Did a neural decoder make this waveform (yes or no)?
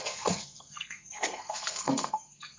yes